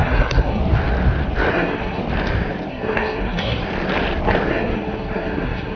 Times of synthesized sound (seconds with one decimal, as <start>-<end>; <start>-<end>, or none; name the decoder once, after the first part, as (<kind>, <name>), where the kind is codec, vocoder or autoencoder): 0.0-0.6 (codec, SNAC); 1.5-2.0; 2.7-3.6; 4.5-5.8